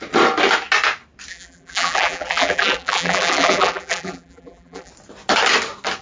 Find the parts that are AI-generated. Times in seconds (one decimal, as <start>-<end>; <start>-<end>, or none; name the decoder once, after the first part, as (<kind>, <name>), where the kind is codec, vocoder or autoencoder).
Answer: 1.3-4.9 (vocoder, BigVGAN v2)